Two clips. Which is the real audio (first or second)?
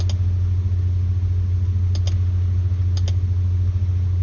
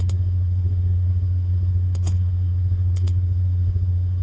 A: first